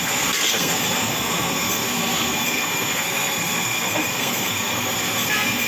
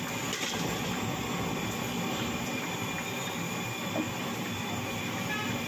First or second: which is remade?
first